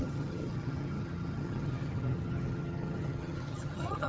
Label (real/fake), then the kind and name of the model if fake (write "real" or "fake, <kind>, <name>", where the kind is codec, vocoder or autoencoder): fake, vocoder, HiFi-GAN